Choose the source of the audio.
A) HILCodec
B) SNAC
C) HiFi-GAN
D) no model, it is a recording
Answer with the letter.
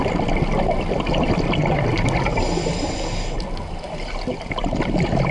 D